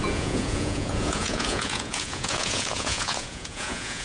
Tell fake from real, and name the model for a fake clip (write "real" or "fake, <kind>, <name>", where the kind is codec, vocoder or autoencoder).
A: fake, vocoder, Vocos